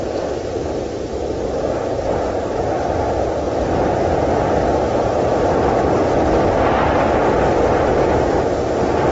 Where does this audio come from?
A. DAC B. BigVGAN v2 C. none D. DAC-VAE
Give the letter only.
C